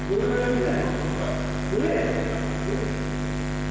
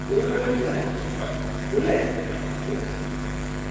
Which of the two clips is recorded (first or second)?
first